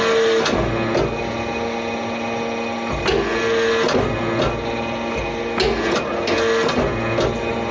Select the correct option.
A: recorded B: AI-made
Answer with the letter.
A